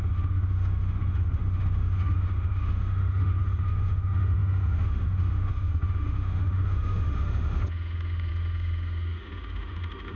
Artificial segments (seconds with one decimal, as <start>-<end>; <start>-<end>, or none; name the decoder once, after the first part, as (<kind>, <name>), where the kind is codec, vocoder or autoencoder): 0.0-10.2 (autoencoder, DAC-VAE)